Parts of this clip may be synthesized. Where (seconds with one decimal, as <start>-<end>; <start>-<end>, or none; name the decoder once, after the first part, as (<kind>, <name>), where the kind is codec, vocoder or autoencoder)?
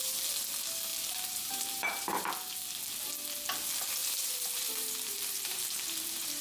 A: 0.9-2.3 (vocoder, BigVGAN v2); 4.0-6.4